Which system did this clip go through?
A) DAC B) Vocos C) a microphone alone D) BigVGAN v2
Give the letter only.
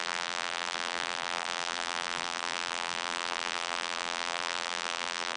D